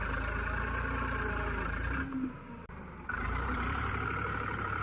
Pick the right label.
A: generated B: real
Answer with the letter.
B